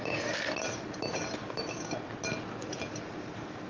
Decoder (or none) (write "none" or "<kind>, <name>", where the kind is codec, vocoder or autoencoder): none